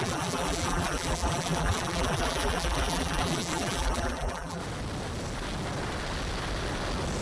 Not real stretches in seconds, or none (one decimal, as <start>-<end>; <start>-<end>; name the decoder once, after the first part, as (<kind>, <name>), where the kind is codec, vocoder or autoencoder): 0.0-4.6 (vocoder, BigVGAN v2)